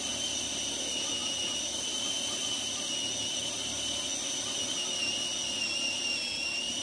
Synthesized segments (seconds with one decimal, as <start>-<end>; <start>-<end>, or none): none

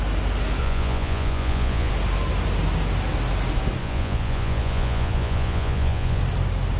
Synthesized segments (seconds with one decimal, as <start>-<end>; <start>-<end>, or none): 0.6-1.9; 3.8-6.2

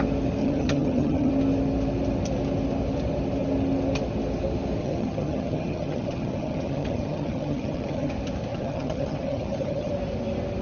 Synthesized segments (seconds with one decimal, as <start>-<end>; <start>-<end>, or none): 0.4-1.3; 4.8-8.1; 8.5-9.9

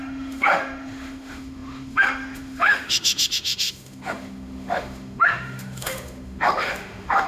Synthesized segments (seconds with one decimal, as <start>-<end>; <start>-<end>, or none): 0.0-7.3

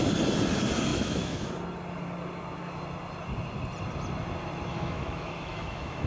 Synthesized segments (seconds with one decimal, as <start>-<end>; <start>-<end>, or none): 0.9-1.5; 4.7-6.1

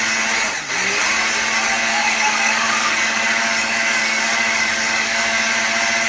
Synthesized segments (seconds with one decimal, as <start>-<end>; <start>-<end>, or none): 1.9-5.5

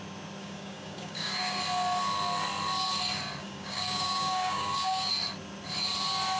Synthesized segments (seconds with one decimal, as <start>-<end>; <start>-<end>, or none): 0.4-1.6; 3.4-5.1